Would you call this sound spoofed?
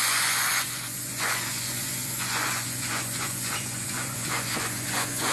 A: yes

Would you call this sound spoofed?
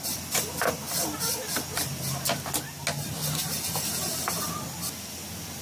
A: no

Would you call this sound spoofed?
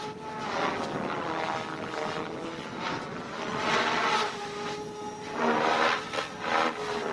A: no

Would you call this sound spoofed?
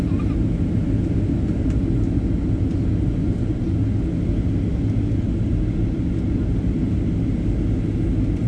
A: no